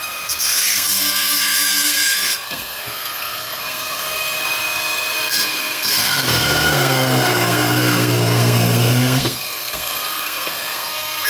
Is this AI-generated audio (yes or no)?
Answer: yes